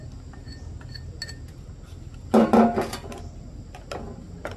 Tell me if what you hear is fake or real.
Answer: real